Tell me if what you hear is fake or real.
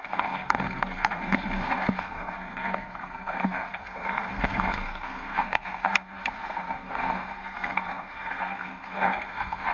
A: fake